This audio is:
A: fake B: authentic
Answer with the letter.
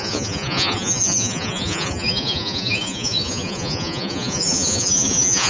A